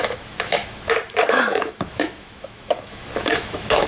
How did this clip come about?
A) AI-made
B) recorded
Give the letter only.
A